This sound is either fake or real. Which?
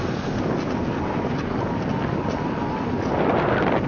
real